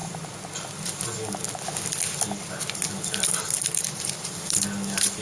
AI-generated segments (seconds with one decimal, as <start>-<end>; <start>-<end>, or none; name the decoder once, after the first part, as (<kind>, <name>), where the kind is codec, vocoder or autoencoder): 3.1-5.2 (vocoder, BigVGAN v2)